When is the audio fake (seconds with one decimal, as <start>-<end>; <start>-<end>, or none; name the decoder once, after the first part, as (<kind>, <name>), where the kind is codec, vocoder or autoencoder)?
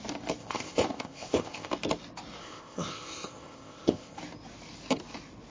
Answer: 0.4-1.7 (codec, ZipCodec); 2.4-4.2